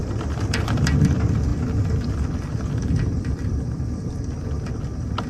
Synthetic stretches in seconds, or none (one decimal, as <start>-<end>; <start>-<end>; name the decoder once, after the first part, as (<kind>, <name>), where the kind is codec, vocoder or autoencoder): 0.0-1.0 (vocoder, BigVGAN v2); 1.5-4.7

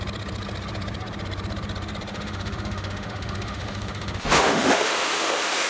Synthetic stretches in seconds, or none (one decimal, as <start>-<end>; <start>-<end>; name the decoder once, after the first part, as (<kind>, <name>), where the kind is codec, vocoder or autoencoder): 2.1-5.7 (autoencoder, DAC-VAE)

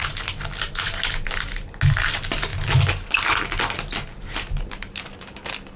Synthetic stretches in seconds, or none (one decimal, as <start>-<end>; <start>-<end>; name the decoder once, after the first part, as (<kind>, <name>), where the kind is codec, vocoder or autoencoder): none

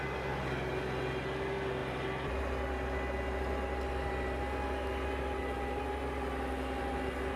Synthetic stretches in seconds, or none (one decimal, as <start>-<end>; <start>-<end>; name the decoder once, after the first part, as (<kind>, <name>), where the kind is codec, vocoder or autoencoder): none

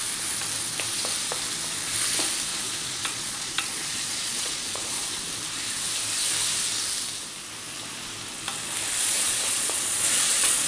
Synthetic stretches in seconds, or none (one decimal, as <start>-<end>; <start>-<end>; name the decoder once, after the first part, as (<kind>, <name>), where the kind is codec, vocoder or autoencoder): 2.5-5.2 (vocoder, Vocos); 9.0-10.7

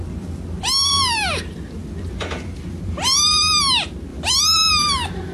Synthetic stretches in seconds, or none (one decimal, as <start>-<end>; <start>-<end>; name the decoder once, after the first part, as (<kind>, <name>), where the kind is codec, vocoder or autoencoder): 1.8-3.4 (vocoder, BigVGAN v2); 4.1-4.7

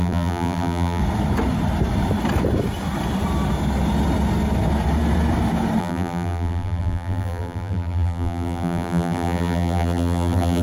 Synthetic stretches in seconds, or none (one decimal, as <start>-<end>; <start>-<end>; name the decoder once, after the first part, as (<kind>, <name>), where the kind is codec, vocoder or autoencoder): 0.0-1.0 (vocoder, BigVGAN v2); 5.8-10.6